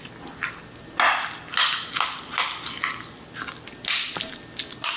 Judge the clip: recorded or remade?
recorded